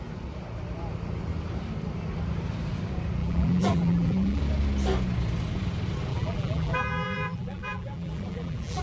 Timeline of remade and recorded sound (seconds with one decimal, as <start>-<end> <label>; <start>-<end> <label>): 0.0-3.2 recorded; 3.2-4.4 remade; 4.4-6.1 recorded; 6.1-8.8 remade